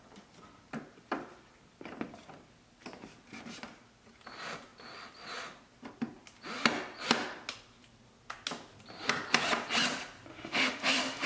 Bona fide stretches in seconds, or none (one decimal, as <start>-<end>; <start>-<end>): 0.0-10.3